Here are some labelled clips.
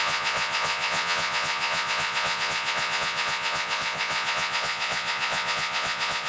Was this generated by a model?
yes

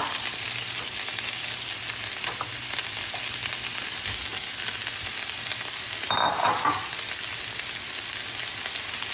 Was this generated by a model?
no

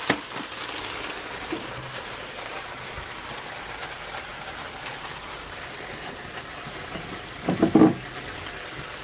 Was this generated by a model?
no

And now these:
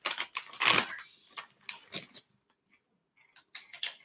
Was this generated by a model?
no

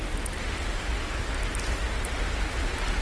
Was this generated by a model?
no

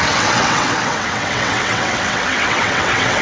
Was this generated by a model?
yes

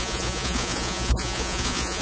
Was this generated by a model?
yes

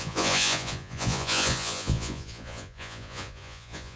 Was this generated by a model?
yes